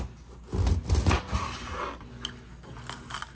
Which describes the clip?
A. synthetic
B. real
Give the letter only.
B